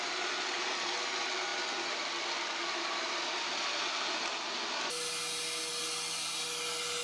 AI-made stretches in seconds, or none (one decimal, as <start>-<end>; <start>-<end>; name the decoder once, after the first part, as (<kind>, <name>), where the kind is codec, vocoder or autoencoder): none